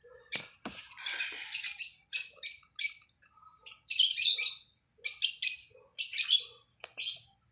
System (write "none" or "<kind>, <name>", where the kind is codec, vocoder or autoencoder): none